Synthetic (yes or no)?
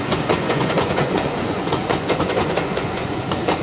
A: yes